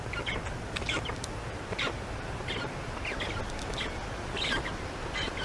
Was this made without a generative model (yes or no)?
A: yes